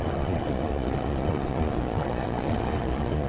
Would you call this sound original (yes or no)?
no